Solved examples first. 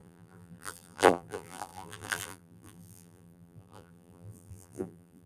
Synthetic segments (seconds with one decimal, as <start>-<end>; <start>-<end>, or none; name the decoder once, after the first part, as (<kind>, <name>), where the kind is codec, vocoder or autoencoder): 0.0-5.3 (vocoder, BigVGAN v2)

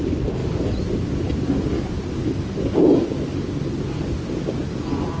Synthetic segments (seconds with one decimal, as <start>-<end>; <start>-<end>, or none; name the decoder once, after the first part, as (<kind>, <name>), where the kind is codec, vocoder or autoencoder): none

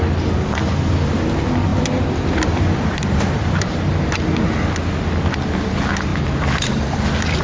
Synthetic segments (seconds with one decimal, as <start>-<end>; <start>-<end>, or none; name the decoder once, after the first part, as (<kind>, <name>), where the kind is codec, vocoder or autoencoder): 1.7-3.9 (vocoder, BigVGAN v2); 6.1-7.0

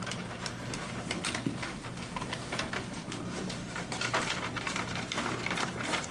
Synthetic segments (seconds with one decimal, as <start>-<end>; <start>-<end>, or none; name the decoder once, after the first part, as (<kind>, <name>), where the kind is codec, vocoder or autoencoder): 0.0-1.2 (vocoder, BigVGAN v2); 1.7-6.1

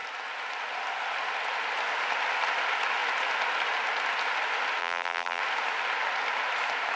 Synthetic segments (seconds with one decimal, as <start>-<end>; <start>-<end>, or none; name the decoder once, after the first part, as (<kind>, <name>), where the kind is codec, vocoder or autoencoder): 4.8-5.4 (vocoder, BigVGAN v2)